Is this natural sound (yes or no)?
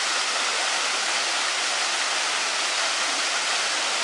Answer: yes